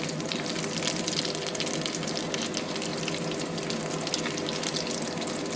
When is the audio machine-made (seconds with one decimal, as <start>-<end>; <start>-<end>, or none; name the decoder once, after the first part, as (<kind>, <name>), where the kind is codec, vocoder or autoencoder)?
none